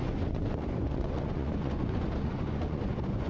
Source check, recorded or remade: remade